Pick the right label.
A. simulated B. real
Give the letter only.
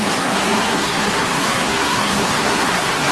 A